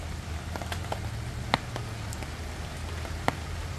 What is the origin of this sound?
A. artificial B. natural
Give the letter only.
B